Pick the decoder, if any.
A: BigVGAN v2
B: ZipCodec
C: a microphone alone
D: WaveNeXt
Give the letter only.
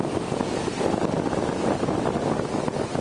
C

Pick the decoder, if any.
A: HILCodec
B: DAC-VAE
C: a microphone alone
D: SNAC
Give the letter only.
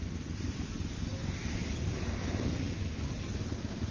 C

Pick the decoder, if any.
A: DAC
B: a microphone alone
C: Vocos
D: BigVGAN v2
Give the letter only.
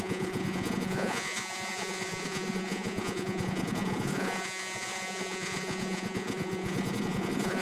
C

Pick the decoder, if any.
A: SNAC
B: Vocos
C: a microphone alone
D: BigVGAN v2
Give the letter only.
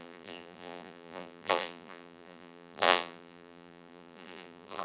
D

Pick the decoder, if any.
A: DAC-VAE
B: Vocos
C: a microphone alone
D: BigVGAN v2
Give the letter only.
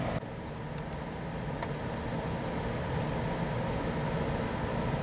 C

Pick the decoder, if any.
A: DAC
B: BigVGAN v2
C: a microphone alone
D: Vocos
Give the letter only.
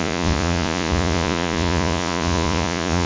D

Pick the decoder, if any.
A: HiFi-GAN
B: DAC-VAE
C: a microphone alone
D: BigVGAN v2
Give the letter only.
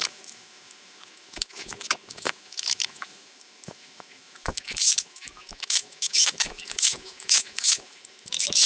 B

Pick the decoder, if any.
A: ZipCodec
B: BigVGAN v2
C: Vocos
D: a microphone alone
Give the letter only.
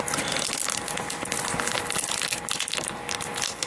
D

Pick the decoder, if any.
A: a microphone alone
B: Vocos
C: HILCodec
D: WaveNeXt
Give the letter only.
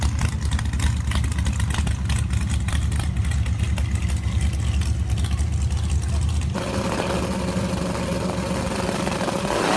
A